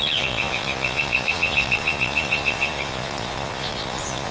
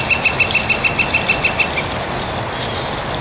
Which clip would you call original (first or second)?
second